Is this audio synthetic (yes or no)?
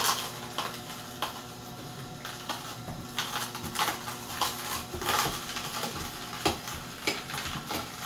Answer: no